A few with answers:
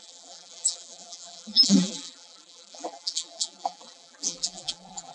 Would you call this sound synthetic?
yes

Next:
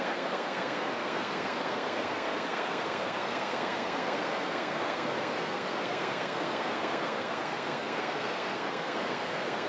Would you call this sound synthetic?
yes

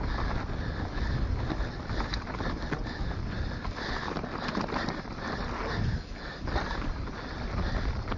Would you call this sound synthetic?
no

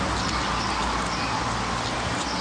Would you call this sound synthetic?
no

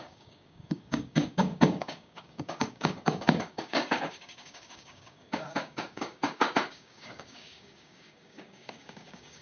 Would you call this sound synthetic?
yes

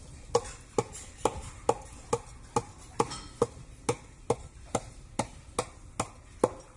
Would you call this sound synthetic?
no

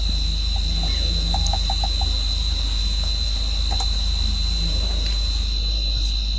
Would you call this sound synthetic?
no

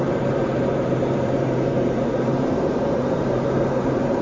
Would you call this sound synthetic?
yes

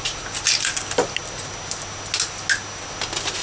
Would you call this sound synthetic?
no